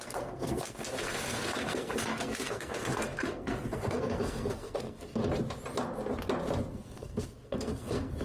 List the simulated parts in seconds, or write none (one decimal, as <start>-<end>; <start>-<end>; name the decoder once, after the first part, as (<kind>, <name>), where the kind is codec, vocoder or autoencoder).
0.0-5.2 (codec, SNAC); 6.7-8.2